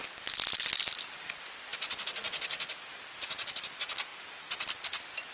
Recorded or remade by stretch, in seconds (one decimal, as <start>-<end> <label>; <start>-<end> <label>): 0.0-5.3 recorded